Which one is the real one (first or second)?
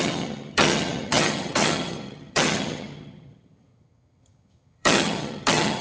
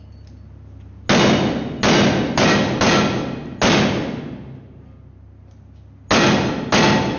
second